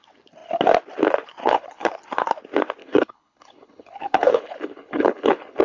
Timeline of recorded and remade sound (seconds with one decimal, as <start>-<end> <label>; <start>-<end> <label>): 0.0-1.4 recorded; 1.4-1.9 remade; 1.9-2.8 recorded; 2.8-5.6 remade